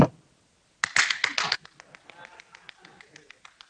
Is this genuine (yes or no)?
yes